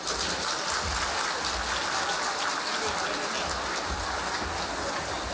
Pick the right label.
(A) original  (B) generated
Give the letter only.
A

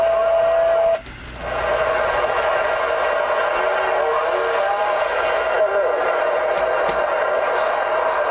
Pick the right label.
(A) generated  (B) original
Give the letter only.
B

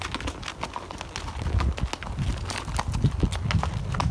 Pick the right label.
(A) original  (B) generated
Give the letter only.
A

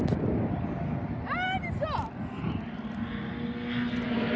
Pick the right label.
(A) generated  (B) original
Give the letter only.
B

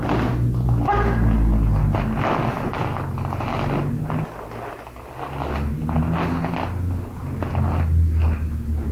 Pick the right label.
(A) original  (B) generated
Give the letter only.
A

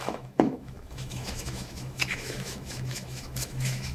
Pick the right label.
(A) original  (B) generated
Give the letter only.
B